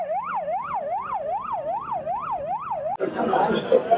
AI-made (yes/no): no